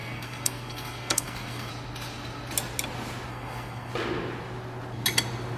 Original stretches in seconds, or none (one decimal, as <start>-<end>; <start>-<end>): 1.7-3.3; 3.9-5.6